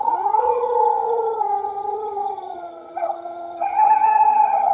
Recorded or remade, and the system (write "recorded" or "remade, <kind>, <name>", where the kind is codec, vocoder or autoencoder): remade, vocoder, HiFi-GAN